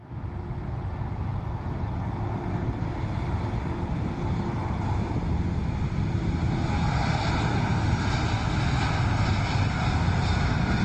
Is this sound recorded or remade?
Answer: recorded